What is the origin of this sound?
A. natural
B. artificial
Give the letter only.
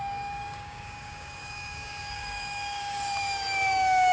B